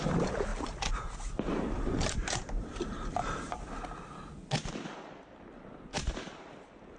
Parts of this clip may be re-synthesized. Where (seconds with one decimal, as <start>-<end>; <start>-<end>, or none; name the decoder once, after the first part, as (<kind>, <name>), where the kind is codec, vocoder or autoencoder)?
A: 0.5-3.4 (vocoder, BigVGAN v2); 5.9-7.0